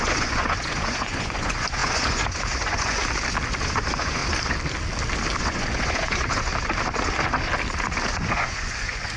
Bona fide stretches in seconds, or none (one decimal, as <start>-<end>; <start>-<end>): 3.0-3.6; 4.2-5.4; 6.5-8.1